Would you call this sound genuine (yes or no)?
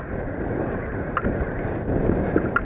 yes